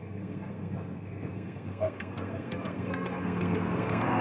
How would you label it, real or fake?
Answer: fake